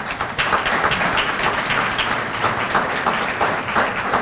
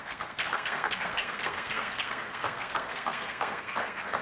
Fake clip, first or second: second